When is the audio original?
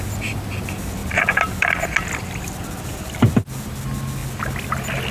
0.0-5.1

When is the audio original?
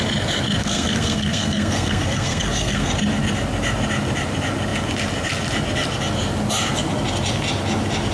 0.0-0.6; 2.9-8.1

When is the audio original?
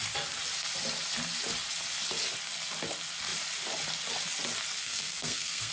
0.0-4.8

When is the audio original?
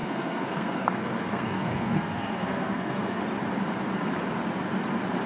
3.2-5.3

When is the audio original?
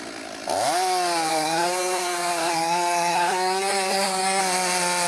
0.0-1.3; 4.4-5.1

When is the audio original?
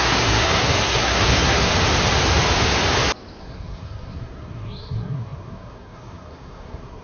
1.7-3.4